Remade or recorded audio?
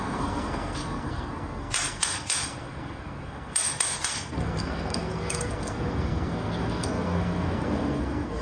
remade